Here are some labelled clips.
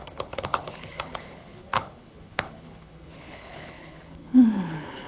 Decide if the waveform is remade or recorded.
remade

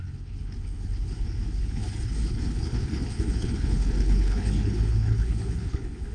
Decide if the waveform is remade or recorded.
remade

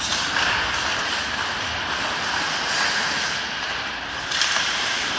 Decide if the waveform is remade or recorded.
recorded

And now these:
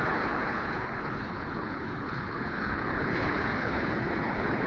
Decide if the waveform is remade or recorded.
remade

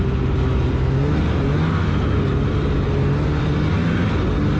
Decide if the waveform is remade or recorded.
recorded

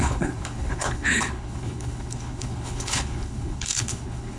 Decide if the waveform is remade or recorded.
remade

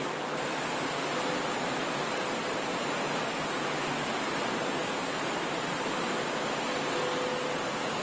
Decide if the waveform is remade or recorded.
recorded